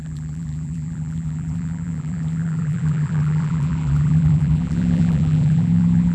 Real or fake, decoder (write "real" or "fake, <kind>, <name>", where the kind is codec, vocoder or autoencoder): fake, vocoder, BigVGAN v2